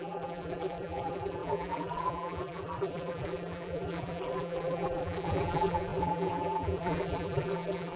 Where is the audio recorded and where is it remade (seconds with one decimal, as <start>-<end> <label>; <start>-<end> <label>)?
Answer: 0.0-8.0 remade